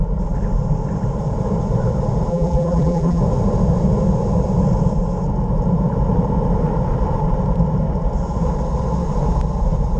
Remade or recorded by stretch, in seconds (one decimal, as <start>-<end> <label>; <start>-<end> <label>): 0.0-2.3 recorded; 2.3-3.2 remade; 3.2-10.0 recorded